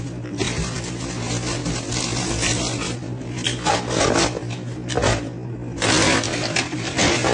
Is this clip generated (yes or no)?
no